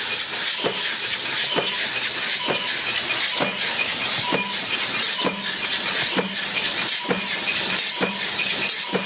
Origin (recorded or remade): recorded